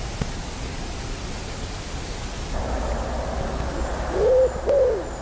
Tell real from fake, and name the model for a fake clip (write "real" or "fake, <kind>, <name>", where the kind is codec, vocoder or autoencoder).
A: real